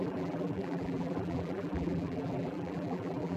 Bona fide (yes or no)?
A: no